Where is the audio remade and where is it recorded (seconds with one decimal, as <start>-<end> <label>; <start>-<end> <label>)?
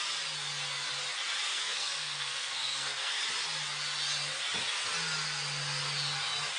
0.0-1.5 recorded; 1.5-3.2 remade; 3.2-6.6 recorded